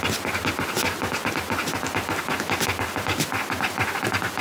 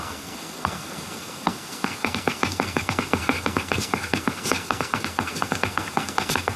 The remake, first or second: second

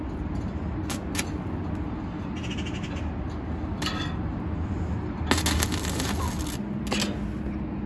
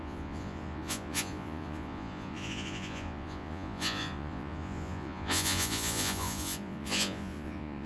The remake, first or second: second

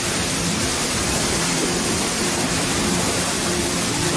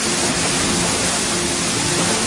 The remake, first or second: first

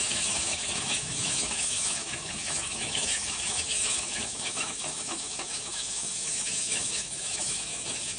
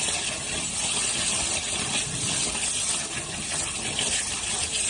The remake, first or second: first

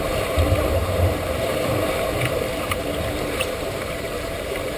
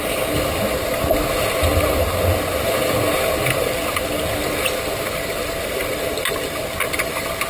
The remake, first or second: first